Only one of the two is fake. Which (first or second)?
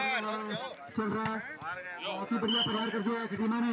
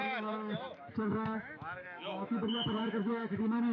second